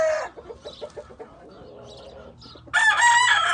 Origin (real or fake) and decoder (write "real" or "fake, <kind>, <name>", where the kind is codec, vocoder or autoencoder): real